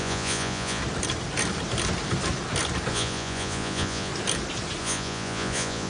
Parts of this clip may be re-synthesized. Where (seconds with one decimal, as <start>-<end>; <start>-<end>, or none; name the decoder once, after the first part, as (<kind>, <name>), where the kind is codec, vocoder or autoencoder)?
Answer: 0.0-0.8 (vocoder, Vocos); 2.9-4.1; 4.8-5.9